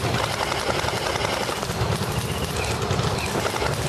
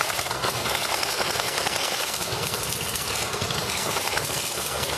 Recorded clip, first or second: first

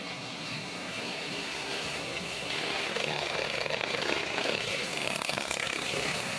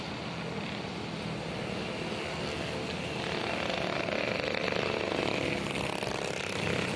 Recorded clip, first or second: second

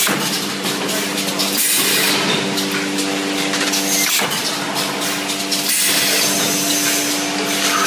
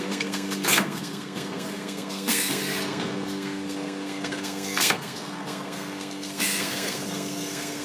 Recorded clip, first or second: first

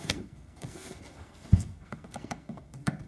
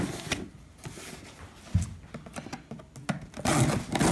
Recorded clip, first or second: second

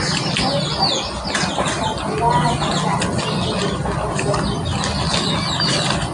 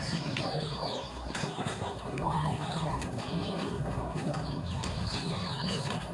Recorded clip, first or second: first